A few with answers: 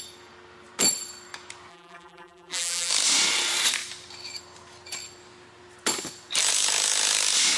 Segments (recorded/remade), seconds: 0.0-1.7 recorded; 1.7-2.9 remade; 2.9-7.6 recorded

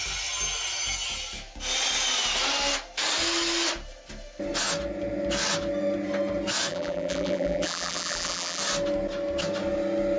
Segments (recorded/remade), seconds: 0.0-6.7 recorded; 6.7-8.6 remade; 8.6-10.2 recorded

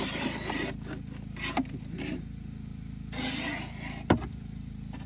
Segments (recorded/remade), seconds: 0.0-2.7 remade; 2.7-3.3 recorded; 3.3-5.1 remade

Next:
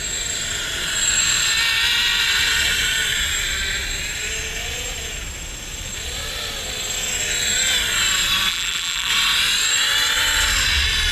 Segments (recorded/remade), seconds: 0.0-8.5 recorded; 8.5-9.1 remade; 9.1-11.1 recorded

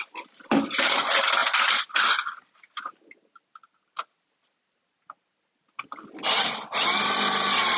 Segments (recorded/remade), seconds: 0.0-7.8 recorded